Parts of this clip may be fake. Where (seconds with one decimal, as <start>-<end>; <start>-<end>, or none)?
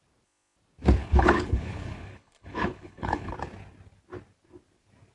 1.0-3.3